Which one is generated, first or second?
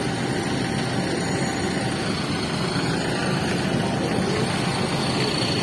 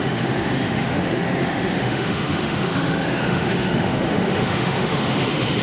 second